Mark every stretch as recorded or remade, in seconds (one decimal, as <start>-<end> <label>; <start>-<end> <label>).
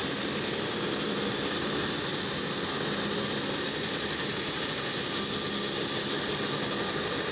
0.0-7.3 recorded